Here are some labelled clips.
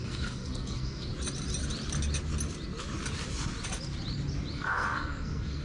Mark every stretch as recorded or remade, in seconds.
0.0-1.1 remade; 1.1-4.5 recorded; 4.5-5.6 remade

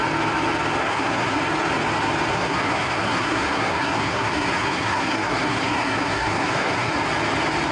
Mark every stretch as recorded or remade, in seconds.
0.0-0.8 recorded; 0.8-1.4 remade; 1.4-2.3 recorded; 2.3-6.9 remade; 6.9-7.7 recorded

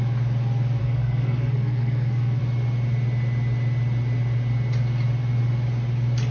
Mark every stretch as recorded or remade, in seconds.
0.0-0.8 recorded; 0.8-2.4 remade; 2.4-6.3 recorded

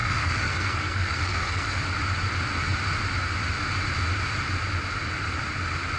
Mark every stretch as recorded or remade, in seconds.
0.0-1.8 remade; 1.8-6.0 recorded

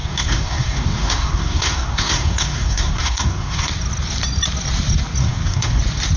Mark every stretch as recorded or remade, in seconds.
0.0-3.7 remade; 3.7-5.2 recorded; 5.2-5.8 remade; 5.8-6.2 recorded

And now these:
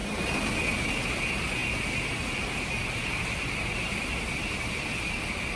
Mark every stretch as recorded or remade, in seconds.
0.0-5.6 recorded

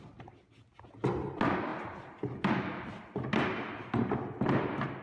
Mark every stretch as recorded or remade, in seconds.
0.0-5.0 recorded

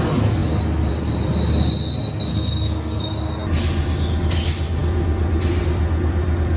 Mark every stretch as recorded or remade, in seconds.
0.0-2.3 recorded; 2.3-3.0 remade; 3.0-6.6 recorded